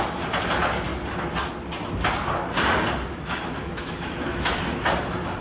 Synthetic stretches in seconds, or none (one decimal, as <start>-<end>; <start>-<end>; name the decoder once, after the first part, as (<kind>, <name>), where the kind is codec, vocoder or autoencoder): 3.1-4.6 (autoencoder, DAC-VAE)